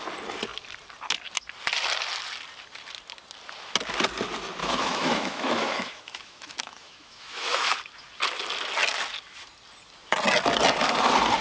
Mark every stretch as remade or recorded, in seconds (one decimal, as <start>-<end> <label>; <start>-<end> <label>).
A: 0.0-4.6 recorded; 4.6-7.8 remade; 7.8-11.4 recorded